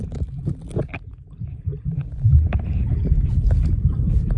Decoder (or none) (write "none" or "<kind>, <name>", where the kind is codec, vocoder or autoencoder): none